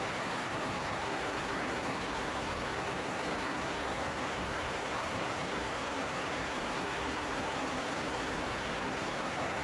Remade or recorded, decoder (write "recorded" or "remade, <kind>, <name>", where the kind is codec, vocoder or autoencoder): remade, codec, SNAC